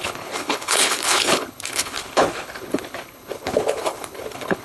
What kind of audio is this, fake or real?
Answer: fake